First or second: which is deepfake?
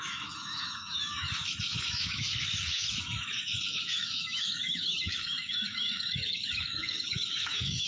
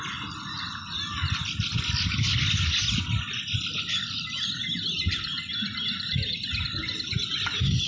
first